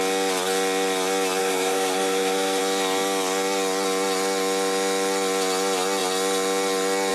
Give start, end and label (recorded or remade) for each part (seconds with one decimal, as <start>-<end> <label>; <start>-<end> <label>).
0.0-1.4 recorded; 1.4-2.6 remade; 2.6-7.1 recorded

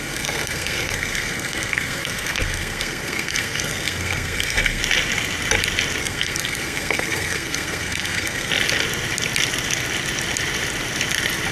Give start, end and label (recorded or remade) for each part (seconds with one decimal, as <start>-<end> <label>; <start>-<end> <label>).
0.0-4.8 remade; 4.8-6.0 recorded; 6.0-8.5 remade; 8.5-11.5 recorded